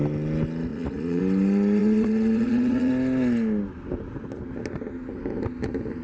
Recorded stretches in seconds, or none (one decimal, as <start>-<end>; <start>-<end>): 0.0-0.7; 1.2-1.8; 2.9-6.0

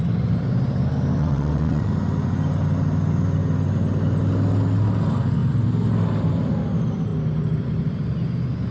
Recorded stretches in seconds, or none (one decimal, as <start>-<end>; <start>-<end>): 0.0-1.2; 1.9-8.7

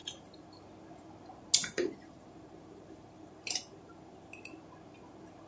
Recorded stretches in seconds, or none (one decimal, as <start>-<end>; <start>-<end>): 0.6-1.6; 4.5-5.5

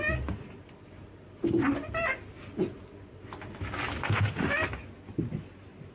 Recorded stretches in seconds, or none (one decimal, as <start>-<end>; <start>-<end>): 0.0-4.0; 4.5-5.9

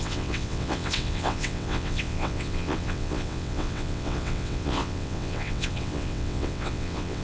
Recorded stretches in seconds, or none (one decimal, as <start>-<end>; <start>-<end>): none